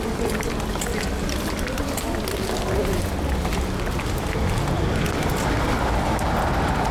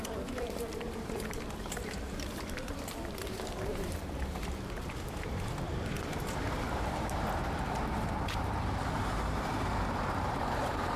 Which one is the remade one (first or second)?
second